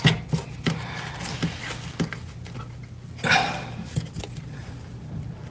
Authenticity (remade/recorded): recorded